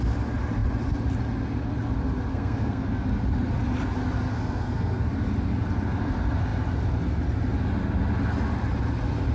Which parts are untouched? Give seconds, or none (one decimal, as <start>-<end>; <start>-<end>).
0.0-2.3; 3.0-4.3; 5.1-9.3